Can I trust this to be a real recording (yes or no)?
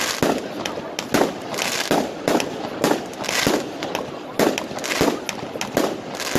yes